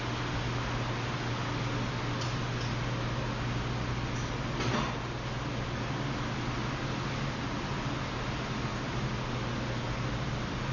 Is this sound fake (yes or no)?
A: no